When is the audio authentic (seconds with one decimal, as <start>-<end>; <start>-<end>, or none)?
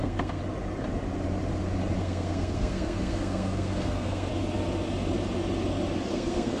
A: 0.4-2.0; 4.3-6.1